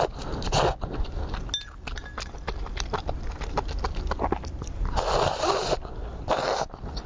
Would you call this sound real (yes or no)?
yes